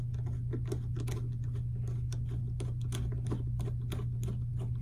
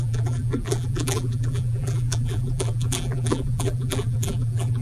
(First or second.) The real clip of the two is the first